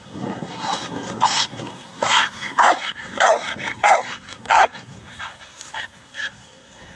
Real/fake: fake